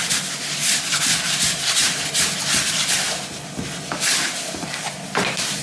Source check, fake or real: real